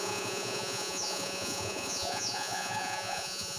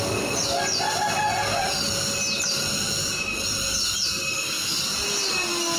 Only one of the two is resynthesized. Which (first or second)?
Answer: first